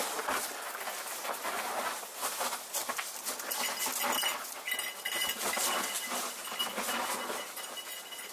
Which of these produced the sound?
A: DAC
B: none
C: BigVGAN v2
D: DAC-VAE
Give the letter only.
B